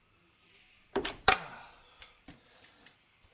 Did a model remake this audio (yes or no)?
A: yes